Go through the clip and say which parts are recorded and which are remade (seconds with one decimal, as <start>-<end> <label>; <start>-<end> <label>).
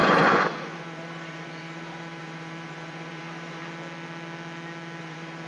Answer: 0.0-3.6 remade; 3.6-5.0 recorded; 5.0-5.5 remade